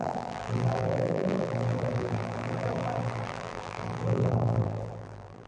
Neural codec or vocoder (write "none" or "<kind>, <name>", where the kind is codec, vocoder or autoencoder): vocoder, BigVGAN v2